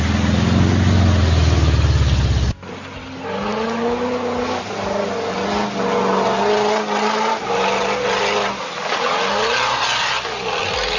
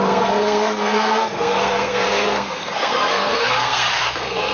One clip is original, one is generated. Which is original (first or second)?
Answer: first